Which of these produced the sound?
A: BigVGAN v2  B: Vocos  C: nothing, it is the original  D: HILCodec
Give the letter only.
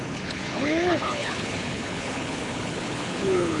D